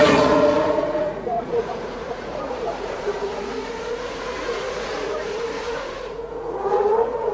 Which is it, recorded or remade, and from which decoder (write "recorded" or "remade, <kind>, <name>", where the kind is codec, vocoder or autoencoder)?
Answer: remade, vocoder, Vocos